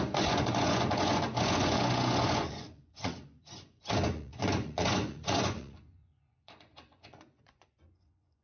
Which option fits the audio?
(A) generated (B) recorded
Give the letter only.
A